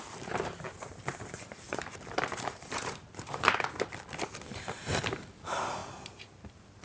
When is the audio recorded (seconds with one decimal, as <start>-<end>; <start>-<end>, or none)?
5.8-6.8